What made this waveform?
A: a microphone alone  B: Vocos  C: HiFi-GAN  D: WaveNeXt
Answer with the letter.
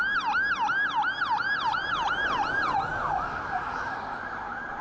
A